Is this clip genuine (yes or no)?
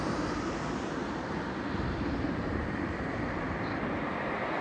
no